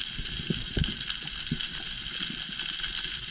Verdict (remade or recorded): recorded